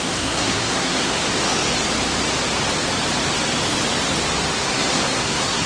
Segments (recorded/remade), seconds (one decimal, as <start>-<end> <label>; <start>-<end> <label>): 0.0-1.2 remade; 1.2-4.6 recorded; 4.6-5.7 remade